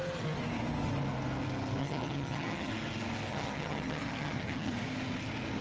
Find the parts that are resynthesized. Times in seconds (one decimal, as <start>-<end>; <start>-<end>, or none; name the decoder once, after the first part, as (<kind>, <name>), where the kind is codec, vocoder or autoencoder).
1.8-2.7 (vocoder, HiFi-GAN); 3.3-4.7